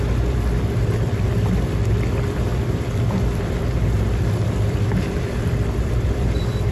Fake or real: fake